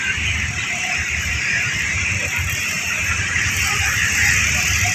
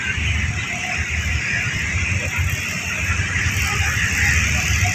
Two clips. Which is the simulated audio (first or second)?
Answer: first